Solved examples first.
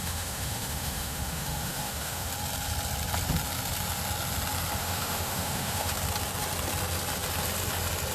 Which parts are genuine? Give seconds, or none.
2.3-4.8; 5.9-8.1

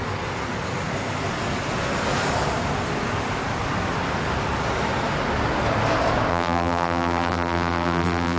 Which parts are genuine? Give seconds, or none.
0.0-6.3